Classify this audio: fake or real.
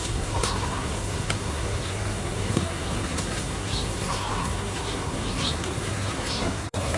fake